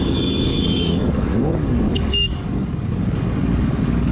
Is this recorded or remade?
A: remade